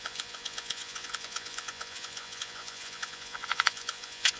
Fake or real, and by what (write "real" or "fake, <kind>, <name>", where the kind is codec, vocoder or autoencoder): fake, vocoder, Vocos